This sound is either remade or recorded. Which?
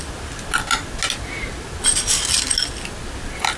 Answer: recorded